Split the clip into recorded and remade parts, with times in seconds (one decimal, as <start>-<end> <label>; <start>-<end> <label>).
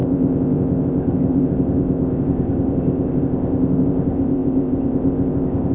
0.0-5.7 remade